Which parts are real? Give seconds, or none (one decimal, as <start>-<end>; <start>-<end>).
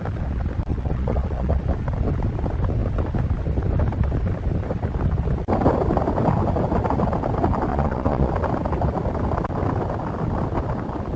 0.0-0.7; 1.6-7.7; 8.3-11.2